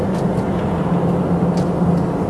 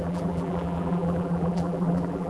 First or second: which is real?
first